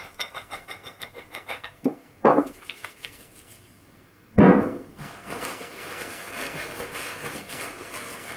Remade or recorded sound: remade